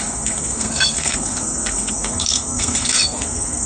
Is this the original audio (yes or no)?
no